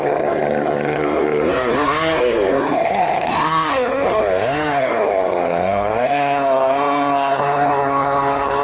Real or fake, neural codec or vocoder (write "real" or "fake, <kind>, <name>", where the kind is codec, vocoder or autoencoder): fake, codec, SNAC